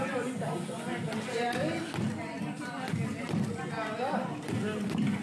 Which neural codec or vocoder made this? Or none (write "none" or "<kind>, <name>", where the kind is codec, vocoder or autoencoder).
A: none